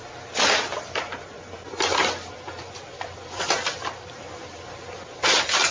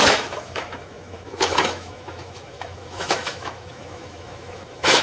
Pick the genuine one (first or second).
first